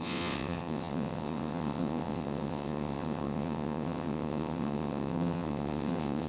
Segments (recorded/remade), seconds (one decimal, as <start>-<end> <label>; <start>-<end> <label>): 0.0-6.3 remade